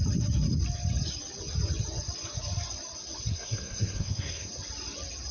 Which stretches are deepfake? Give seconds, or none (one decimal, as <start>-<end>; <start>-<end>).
3.3-4.5